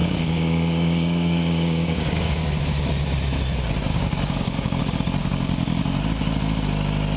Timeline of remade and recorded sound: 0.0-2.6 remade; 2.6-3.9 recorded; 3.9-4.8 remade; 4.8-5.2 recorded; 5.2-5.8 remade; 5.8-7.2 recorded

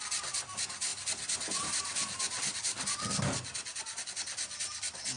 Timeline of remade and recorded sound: 0.0-5.2 recorded

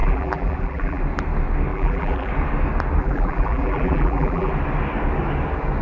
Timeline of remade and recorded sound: 0.0-1.0 remade; 1.0-1.7 recorded; 1.7-2.3 remade; 2.3-3.0 recorded; 3.0-4.5 remade; 4.5-5.8 recorded

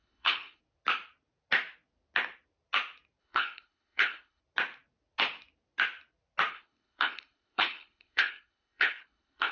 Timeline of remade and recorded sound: 0.0-0.6 remade; 0.6-3.2 recorded; 3.2-4.4 remade; 4.4-6.5 recorded; 6.5-9.5 remade

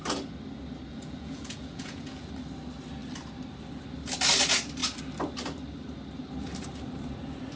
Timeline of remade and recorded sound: 0.0-0.9 recorded; 0.9-2.3 remade; 2.3-7.6 recorded

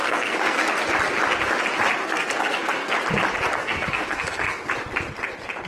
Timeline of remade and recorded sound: 0.0-0.7 remade; 0.7-2.0 recorded; 2.0-2.9 remade; 2.9-3.5 recorded; 3.5-4.7 remade; 4.7-5.7 recorded